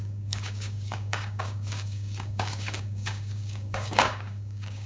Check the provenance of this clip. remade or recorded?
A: remade